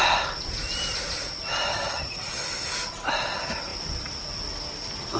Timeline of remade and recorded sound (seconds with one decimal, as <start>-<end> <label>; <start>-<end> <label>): 0.0-1.7 recorded; 1.7-2.4 remade; 2.4-5.2 recorded